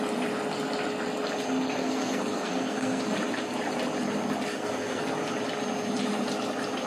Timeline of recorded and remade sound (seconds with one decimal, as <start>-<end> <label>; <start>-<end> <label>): 0.0-1.8 recorded; 1.8-3.0 remade; 3.0-4.5 recorded; 4.5-5.1 remade; 5.1-6.9 recorded